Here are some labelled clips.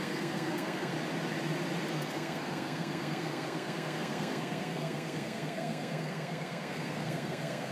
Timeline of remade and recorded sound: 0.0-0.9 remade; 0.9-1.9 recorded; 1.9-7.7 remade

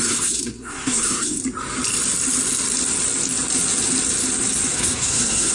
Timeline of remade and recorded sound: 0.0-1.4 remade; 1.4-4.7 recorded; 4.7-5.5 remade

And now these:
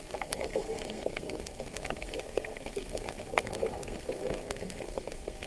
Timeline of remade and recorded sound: 0.0-5.5 remade

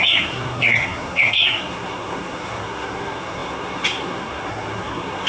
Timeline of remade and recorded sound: 0.0-5.3 remade